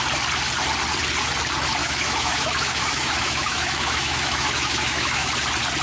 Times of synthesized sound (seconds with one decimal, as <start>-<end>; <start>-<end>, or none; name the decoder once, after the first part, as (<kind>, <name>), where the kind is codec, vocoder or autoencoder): 1.8-5.3 (autoencoder, DAC-VAE)